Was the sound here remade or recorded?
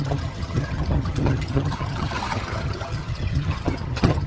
remade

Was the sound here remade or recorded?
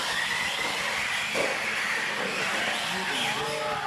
recorded